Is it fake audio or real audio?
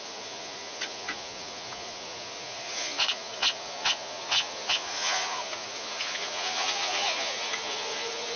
fake